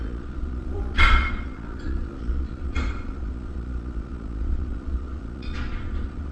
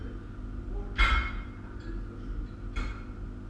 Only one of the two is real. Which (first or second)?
second